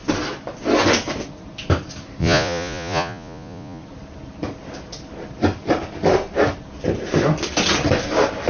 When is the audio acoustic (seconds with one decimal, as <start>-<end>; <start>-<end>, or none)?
0.0-2.2; 3.8-8.5